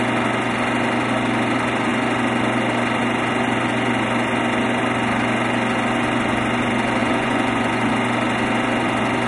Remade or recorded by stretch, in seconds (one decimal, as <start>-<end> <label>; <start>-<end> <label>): 0.0-7.0 recorded; 7.0-7.9 remade; 7.9-9.3 recorded